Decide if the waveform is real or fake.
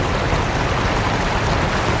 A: real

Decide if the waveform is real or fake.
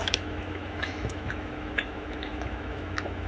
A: fake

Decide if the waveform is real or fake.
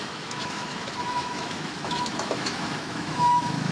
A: fake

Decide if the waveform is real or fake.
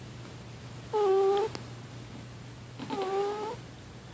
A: real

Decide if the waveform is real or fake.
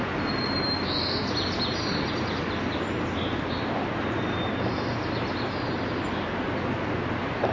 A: real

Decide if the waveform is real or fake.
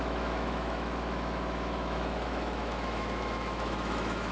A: fake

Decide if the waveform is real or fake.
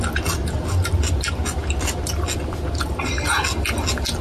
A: real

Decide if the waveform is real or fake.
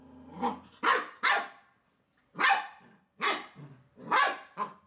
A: real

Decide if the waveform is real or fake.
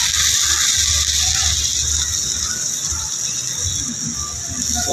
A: real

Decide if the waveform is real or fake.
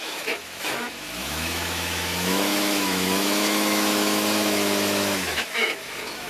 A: fake